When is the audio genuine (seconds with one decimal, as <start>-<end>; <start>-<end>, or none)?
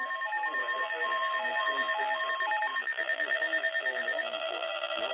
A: 0.0-0.6; 2.2-2.7